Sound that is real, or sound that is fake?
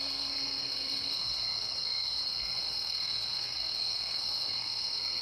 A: fake